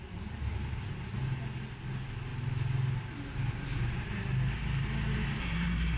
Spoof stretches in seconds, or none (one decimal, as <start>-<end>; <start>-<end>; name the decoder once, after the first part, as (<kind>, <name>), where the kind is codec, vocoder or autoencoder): 5.4-6.0 (codec, SNAC)